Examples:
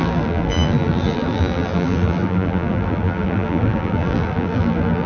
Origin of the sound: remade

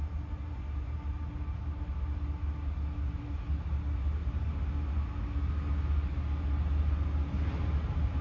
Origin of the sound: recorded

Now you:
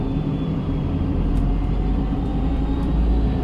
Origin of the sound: remade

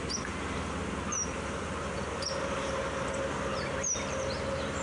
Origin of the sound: remade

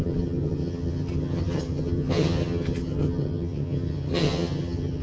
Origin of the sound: remade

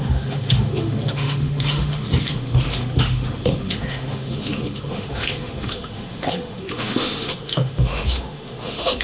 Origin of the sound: remade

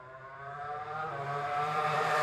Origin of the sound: remade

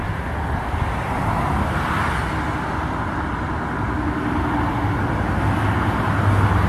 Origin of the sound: recorded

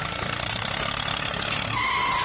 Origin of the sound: recorded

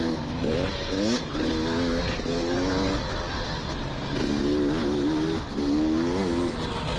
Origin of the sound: recorded